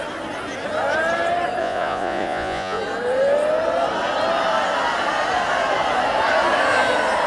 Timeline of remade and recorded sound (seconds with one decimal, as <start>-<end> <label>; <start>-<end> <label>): 0.0-1.6 recorded; 1.6-2.8 remade; 2.8-7.3 recorded